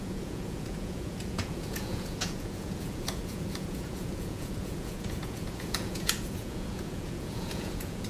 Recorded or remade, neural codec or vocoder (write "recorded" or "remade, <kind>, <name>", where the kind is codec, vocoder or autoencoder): remade, vocoder, Vocos